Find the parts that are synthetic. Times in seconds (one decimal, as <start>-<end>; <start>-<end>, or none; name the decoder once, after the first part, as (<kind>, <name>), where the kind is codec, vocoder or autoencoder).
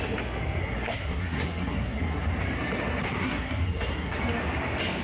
0.6-2.3 (codec, SNAC); 3.0-4.2